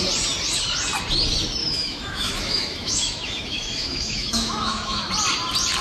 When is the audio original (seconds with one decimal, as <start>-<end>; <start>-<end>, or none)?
0.0-1.6; 5.1-5.8